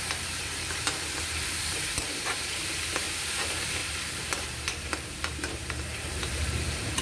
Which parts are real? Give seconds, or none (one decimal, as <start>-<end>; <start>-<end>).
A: 3.8-4.7